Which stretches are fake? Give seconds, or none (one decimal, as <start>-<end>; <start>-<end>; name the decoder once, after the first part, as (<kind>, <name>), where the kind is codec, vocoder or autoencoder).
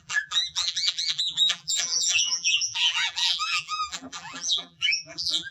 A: 0.0-5.5 (vocoder, BigVGAN v2)